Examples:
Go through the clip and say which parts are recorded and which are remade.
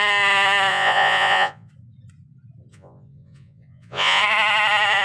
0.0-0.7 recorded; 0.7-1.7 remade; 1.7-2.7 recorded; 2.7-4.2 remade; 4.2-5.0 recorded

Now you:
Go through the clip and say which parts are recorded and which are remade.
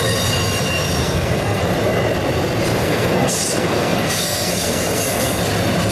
0.0-1.0 recorded; 1.0-1.6 remade; 1.6-2.8 recorded; 2.8-5.4 remade; 5.4-5.9 recorded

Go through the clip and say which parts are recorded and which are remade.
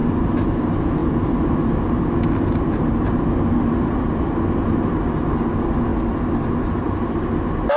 0.0-7.8 recorded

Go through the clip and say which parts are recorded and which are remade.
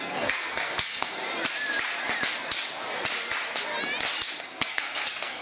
0.0-1.2 remade; 1.2-4.4 recorded; 4.4-5.4 remade